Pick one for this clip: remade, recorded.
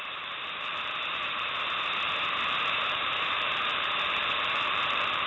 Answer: remade